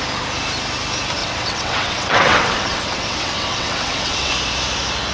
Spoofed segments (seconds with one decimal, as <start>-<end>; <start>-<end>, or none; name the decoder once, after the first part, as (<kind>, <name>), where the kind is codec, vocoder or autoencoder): 1.2-4.3 (vocoder, WaveNeXt)